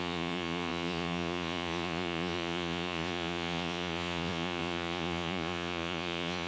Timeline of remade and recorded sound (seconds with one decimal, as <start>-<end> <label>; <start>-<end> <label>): 0.0-6.5 remade